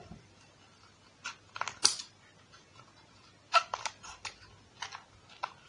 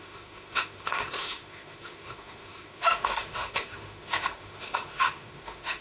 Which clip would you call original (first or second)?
first